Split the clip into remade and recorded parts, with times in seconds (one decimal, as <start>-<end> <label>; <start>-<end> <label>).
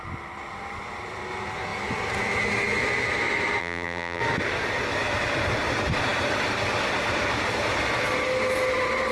0.0-3.6 recorded; 3.6-4.2 remade; 4.2-9.1 recorded